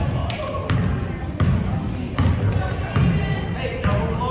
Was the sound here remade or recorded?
recorded